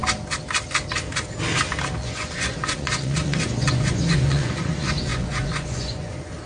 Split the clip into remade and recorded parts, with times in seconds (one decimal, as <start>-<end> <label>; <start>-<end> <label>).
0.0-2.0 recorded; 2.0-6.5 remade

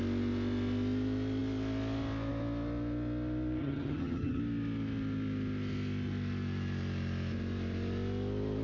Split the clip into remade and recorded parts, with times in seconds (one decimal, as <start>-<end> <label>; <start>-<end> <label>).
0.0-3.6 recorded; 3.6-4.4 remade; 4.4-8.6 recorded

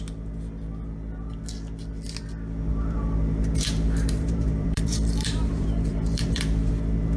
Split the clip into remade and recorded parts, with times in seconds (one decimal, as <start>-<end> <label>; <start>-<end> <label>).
0.0-2.7 recorded; 2.7-6.7 remade; 6.7-7.2 recorded

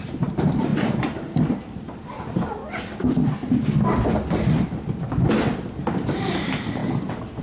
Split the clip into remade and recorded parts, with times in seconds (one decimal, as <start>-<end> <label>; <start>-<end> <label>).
0.0-2.6 remade; 2.6-6.3 recorded; 6.3-6.8 remade; 6.8-7.4 recorded

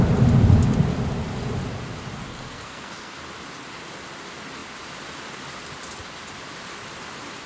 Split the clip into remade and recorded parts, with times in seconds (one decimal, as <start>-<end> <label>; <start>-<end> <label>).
0.0-2.3 recorded; 2.3-3.2 remade; 3.2-7.5 recorded